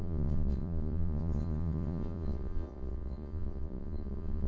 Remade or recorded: remade